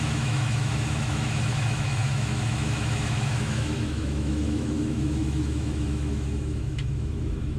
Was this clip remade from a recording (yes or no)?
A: yes